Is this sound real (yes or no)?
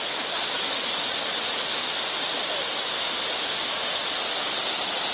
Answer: yes